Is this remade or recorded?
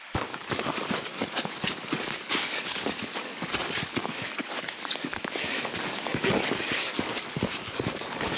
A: remade